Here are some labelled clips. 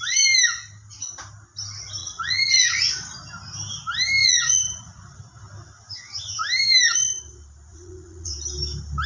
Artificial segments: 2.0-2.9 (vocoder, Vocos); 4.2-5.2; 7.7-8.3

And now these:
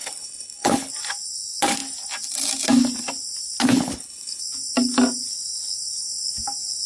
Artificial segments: 0.0-0.9 (codec, HILCodec); 3.6-4.4

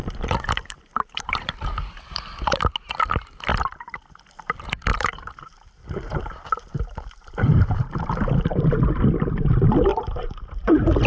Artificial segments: 0.0-2.6 (vocoder, BigVGAN v2); 3.5-4.2; 4.9-8.7; 9.9-11.1

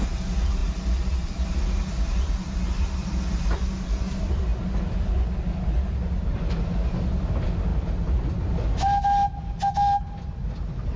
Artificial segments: none